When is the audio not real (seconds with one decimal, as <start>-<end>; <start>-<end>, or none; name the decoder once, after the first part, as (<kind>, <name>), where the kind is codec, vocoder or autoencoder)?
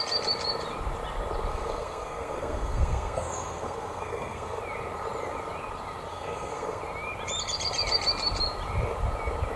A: 1.5-4.6 (codec, SNAC); 6.1-6.8